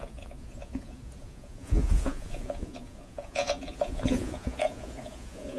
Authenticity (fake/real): fake